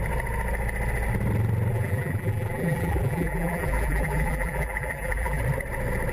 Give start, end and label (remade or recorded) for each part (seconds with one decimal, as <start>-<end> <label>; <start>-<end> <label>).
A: 0.0-1.7 recorded; 1.7-5.4 remade; 5.4-6.1 recorded